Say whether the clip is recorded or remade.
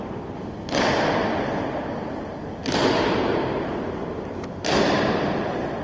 recorded